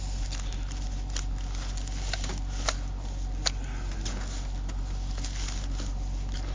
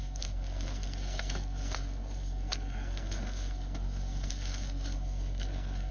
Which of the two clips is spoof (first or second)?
second